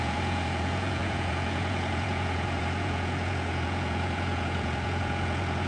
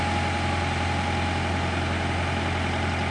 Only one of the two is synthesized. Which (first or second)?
first